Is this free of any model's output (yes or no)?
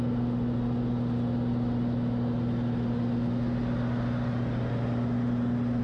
yes